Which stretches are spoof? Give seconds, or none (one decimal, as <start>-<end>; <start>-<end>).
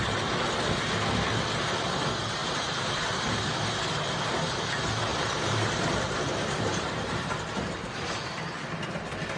2.4-3.4; 5.1-7.9